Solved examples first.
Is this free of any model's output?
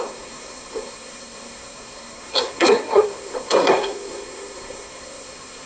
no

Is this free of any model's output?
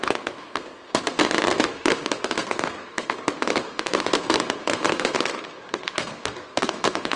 no